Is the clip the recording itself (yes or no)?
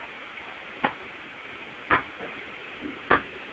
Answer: yes